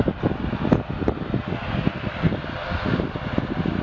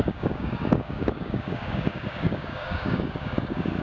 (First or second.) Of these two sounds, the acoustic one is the first